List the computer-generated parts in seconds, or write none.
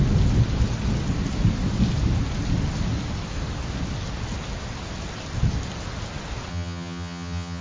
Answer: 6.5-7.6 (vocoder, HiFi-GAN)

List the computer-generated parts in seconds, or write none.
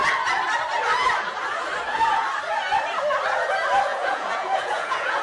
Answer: 3.9-5.2 (vocoder, Vocos)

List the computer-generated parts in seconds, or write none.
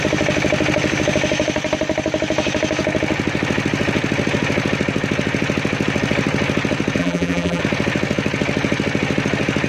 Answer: 7.0-7.6 (vocoder, BigVGAN v2)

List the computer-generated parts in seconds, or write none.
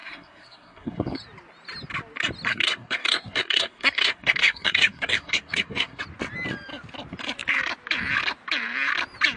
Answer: 0.0-1.2 (codec, SNAC); 2.5-6.0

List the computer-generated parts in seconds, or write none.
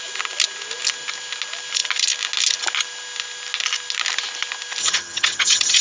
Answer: 4.8-5.8 (vocoder, HiFi-GAN)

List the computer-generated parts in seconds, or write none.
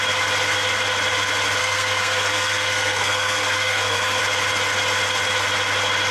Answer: 1.6-4.2 (codec, SNAC)